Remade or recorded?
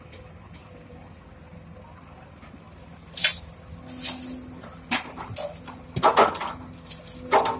recorded